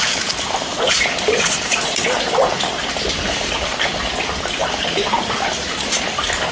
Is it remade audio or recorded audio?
recorded